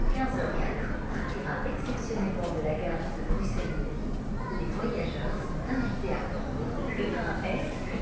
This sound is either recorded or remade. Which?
recorded